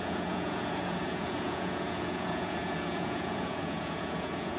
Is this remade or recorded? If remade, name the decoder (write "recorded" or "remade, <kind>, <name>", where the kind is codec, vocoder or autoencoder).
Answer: remade, vocoder, Vocos